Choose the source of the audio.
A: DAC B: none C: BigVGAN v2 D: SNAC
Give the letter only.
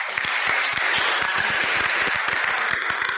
C